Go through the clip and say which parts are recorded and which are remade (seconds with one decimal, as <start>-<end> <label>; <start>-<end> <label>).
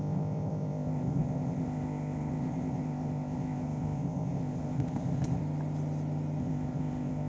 0.0-5.4 remade; 5.4-6.4 recorded; 6.4-7.3 remade